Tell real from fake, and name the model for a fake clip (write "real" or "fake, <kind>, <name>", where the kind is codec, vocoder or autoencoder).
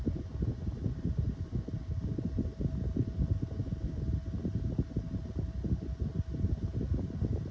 real